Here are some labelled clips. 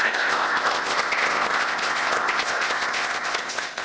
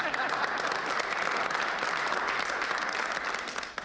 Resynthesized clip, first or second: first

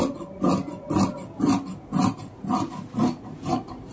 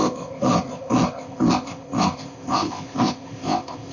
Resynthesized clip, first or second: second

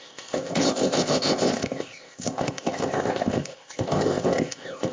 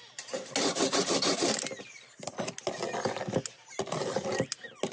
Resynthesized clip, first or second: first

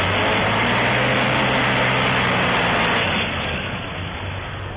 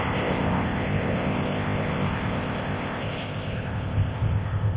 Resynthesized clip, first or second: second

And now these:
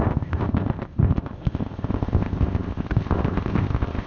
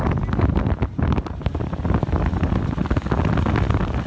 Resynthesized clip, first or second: first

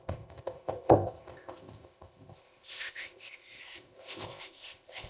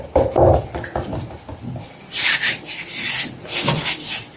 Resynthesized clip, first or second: first